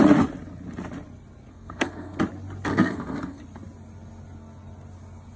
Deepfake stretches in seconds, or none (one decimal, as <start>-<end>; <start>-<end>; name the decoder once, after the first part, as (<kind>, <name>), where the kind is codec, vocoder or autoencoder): 1.5-2.2 (codec, SNAC); 2.7-3.4